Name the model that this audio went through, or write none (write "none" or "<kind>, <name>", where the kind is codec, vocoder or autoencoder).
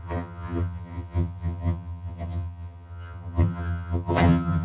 vocoder, HiFi-GAN